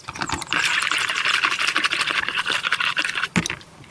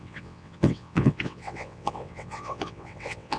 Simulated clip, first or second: second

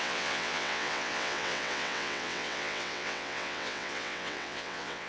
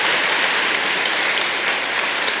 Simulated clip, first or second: first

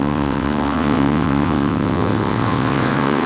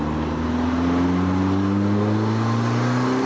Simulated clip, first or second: first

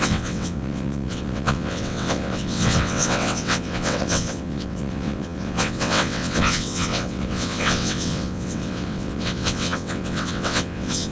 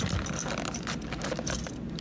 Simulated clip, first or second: first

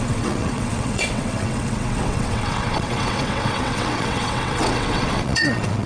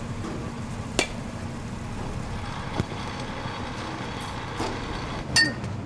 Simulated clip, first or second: first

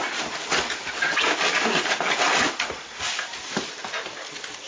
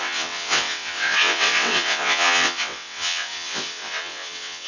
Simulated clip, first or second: second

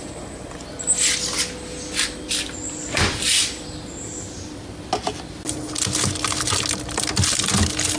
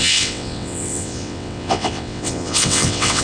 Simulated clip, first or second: second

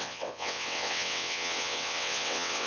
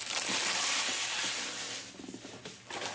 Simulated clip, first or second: first